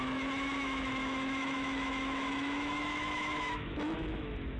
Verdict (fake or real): fake